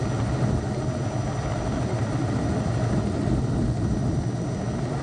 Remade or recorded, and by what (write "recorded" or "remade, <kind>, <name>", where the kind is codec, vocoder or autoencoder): recorded